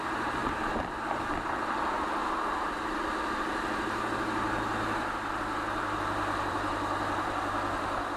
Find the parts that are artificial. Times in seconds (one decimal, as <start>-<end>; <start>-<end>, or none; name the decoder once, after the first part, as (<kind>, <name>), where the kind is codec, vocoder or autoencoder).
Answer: 0.4-2.4 (vocoder, BigVGAN v2); 3.5-7.4